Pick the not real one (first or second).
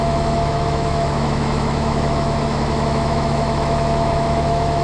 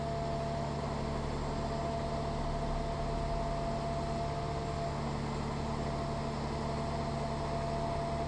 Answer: first